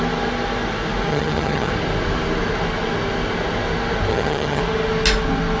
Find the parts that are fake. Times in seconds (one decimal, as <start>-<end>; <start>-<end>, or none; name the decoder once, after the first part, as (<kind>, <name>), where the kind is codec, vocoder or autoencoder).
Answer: 1.1-1.7 (vocoder, HiFi-GAN); 4.1-4.6

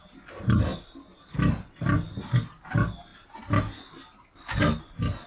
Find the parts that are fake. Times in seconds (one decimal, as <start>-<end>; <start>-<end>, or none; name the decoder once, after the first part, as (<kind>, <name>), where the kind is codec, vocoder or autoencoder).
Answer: none

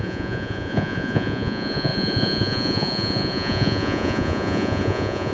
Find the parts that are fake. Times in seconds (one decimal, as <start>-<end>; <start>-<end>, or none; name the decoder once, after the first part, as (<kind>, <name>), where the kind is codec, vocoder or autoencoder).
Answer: 0.0-5.3 (vocoder, Vocos)